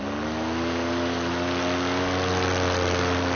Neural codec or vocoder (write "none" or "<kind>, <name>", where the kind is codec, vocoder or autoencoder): none